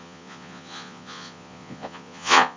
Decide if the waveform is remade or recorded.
remade